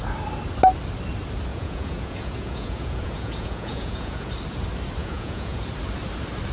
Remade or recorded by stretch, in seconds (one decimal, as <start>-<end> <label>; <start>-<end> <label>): 0.0-1.5 recorded; 1.5-4.3 remade; 4.3-5.0 recorded; 5.0-5.6 remade; 5.6-6.5 recorded